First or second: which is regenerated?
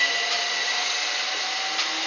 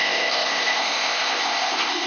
second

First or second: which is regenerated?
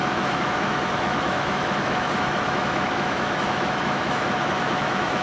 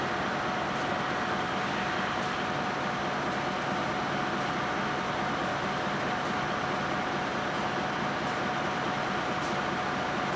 first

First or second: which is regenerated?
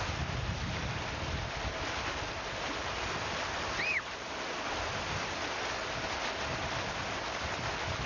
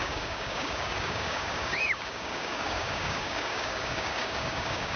second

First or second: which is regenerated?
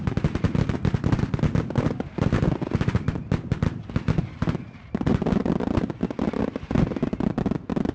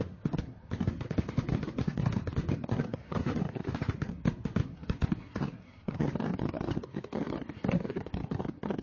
second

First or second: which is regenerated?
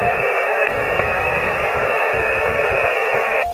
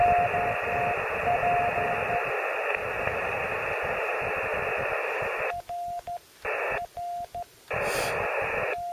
first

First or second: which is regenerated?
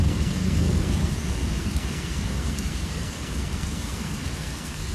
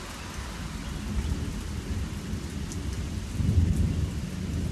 first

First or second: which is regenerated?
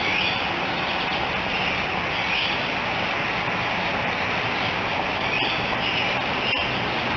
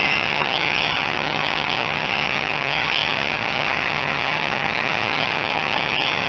second